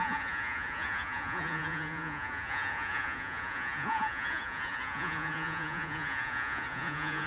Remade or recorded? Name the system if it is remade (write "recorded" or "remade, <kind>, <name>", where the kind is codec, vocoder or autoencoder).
remade, vocoder, Vocos